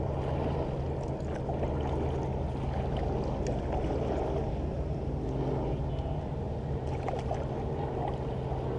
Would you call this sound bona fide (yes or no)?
yes